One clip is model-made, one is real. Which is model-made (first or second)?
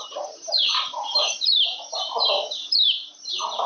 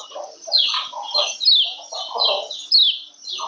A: first